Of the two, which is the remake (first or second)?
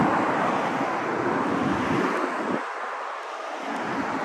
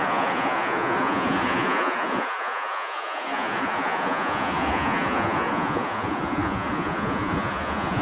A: second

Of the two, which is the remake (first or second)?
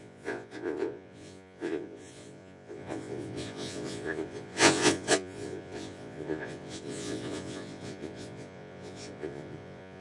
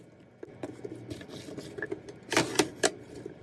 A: first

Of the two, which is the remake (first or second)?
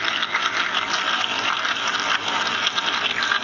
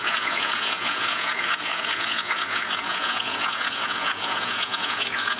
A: second